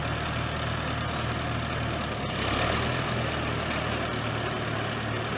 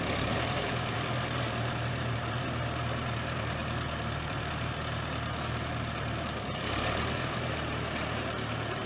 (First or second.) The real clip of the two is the first